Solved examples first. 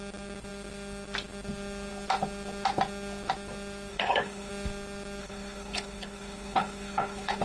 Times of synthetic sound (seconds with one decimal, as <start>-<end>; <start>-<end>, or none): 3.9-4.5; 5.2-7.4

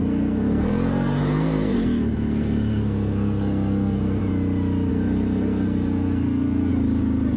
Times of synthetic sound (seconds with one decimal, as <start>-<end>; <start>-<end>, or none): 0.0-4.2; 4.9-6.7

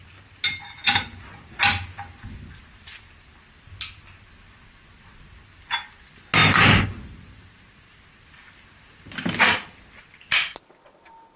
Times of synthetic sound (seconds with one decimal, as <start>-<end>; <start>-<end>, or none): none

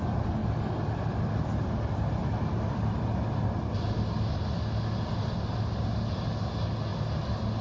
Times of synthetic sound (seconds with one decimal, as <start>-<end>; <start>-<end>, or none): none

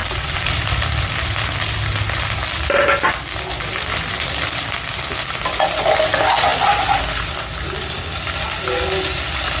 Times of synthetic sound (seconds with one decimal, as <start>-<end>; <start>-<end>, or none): 0.0-1.3

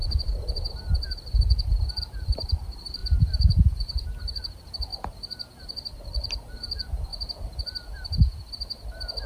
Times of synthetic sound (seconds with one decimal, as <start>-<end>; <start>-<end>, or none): 0.0-4.9; 6.0-7.1

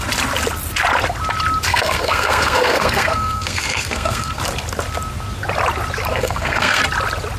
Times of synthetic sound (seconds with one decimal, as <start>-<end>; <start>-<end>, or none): 1.7-4.4; 6.1-6.8

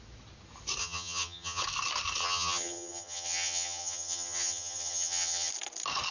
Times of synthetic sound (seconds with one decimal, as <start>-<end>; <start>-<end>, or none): 0.8-1.6; 2.2-5.5